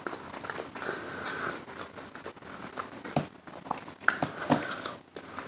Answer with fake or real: real